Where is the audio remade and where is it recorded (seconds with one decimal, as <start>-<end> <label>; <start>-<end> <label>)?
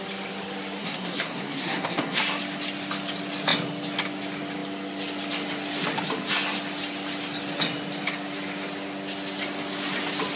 0.0-0.8 recorded; 0.8-2.2 remade; 2.2-10.4 recorded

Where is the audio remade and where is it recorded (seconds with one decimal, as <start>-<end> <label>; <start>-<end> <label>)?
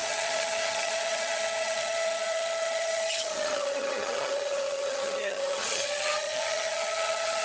0.0-7.4 remade